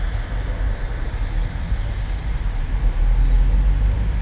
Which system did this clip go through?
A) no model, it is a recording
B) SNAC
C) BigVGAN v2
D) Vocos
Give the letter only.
A